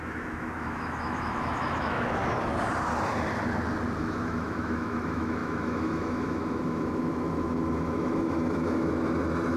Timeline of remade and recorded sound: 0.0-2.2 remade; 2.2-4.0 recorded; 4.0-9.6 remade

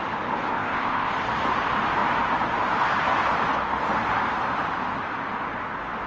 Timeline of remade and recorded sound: 0.0-0.5 recorded; 0.5-1.1 remade; 1.1-6.1 recorded

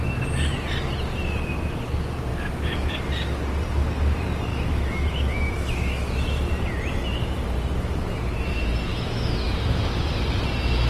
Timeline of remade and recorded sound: 0.0-2.3 recorded; 2.3-2.9 remade; 2.9-4.5 recorded; 4.5-6.4 remade; 6.4-8.9 recorded; 8.9-9.9 remade; 9.9-10.9 recorded

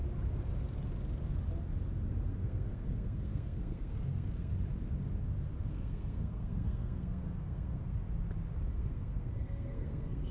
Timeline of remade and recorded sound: 0.0-2.3 recorded; 2.3-4.5 remade; 4.5-5.7 recorded; 5.7-7.8 remade; 7.8-8.7 recorded; 8.7-10.3 remade